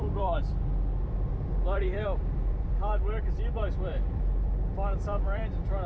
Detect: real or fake fake